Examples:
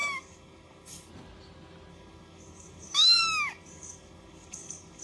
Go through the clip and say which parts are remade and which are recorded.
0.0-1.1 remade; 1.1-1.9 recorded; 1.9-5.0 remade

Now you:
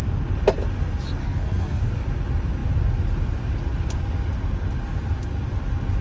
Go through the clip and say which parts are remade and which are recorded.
0.0-1.2 recorded; 1.2-1.8 remade; 1.8-6.0 recorded

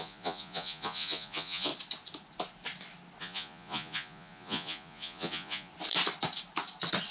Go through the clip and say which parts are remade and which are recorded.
0.0-1.7 remade; 1.7-3.2 recorded; 3.2-5.7 remade; 5.7-7.1 recorded

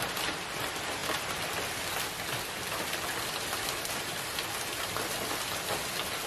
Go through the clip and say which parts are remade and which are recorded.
0.0-6.3 recorded

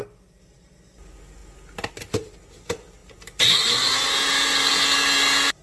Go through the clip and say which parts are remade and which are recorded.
0.0-5.6 recorded